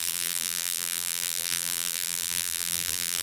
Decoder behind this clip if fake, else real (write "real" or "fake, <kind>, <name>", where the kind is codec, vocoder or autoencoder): fake, vocoder, BigVGAN v2